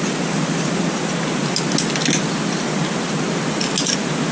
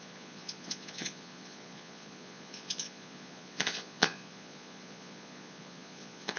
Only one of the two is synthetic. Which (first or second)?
second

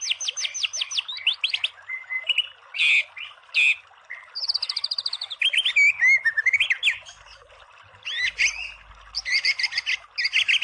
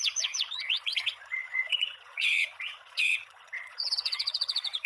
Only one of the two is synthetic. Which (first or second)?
second